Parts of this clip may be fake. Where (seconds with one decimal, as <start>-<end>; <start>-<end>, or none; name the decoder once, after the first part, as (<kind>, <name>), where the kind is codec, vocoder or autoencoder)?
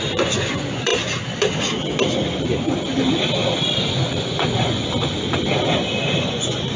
0.0-0.9 (vocoder, Vocos); 3.8-4.8; 6.0-6.8